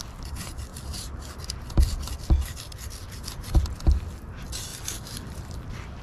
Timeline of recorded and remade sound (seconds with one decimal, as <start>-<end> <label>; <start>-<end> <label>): 0.0-3.0 remade; 3.0-3.6 recorded; 3.6-4.7 remade; 4.7-5.3 recorded; 5.3-6.0 remade